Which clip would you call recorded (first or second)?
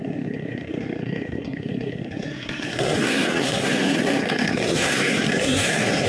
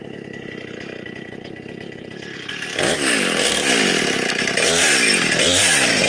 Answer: second